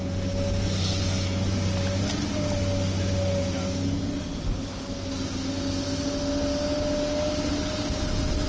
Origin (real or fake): real